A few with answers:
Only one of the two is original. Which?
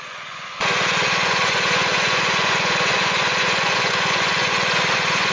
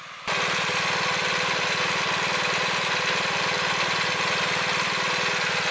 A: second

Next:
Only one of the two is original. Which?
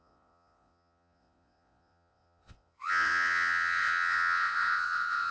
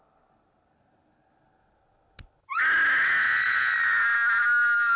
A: second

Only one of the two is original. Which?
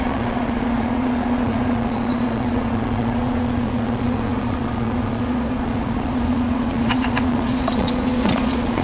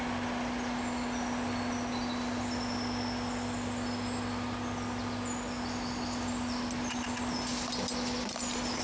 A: second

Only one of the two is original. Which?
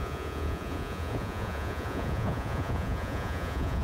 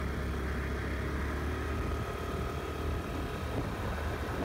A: second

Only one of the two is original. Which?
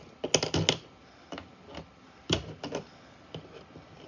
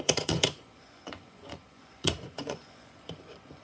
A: first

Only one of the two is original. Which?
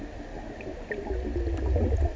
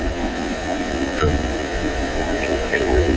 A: first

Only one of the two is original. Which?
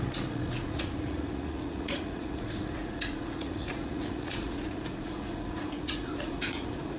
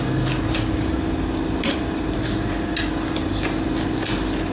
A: second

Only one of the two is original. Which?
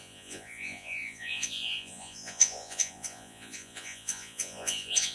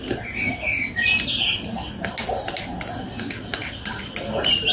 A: second